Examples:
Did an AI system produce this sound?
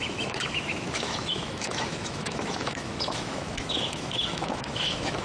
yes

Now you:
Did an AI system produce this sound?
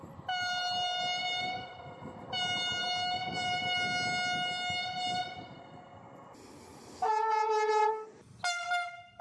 no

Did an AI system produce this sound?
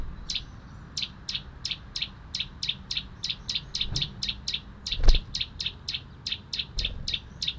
no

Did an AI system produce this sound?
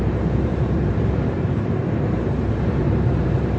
yes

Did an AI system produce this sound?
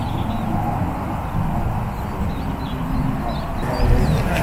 no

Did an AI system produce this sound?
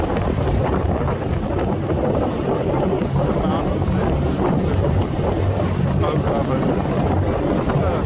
yes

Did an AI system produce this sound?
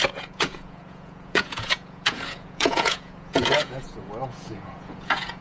yes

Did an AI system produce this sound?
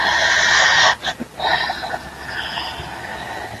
no